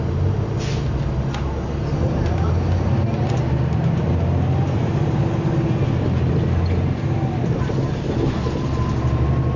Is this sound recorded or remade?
recorded